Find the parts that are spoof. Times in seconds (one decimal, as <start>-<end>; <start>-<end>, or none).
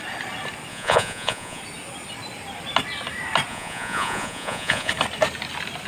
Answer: 0.7-1.6; 3.5-4.9